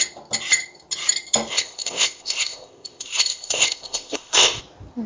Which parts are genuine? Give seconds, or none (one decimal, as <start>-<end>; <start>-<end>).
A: 0.0-1.5; 4.6-5.1